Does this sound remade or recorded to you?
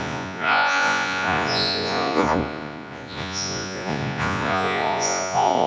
remade